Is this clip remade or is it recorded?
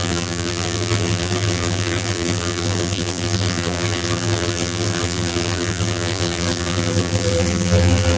remade